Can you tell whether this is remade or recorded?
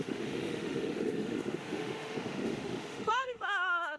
remade